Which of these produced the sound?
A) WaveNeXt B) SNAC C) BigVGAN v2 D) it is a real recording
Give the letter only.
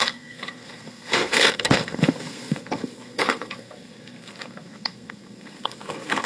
B